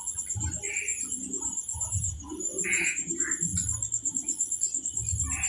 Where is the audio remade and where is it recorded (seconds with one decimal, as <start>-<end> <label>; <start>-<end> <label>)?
0.0-0.9 recorded; 0.9-3.1 remade; 3.1-5.5 recorded